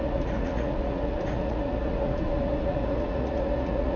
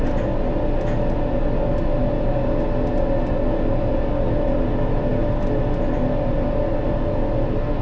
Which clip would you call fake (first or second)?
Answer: first